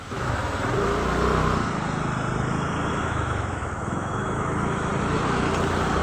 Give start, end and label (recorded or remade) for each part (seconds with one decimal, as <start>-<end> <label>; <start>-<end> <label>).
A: 0.0-0.4 remade; 0.4-2.9 recorded; 2.9-4.9 remade; 4.9-6.0 recorded